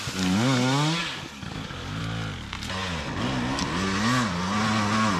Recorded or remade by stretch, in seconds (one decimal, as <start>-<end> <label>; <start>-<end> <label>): 0.0-1.0 recorded; 1.0-2.0 remade; 2.0-5.2 recorded